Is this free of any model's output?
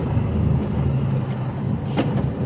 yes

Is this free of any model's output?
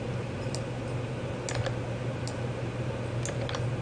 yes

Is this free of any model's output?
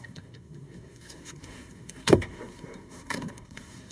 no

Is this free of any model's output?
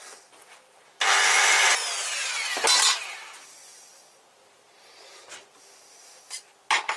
yes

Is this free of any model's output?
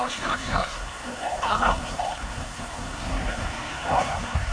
no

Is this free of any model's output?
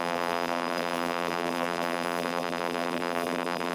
no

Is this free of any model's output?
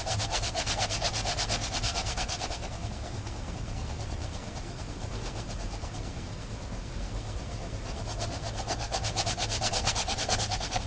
no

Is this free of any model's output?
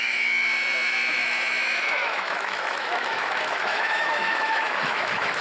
no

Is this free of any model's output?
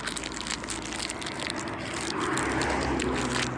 yes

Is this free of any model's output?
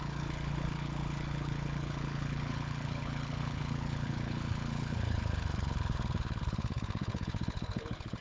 no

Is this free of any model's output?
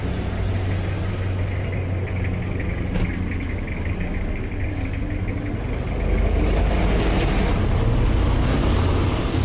yes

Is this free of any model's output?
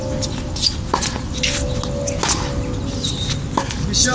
yes